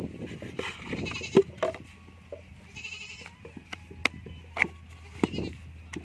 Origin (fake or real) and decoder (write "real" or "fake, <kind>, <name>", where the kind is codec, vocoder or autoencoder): real